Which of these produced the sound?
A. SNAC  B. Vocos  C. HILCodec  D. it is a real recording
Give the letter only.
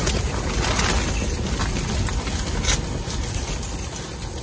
D